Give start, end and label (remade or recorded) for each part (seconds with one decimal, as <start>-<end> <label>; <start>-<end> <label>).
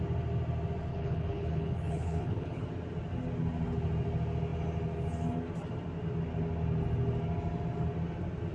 0.0-0.9 recorded; 0.9-2.6 remade; 2.6-8.5 recorded